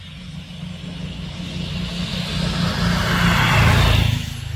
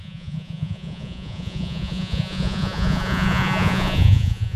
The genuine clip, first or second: first